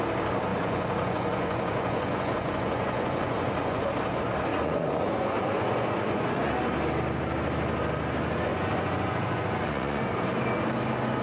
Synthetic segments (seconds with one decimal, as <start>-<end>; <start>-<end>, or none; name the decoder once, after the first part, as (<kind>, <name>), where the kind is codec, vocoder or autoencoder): 0.5-3.8 (vocoder, Vocos); 4.5-6.5; 8.5-10.0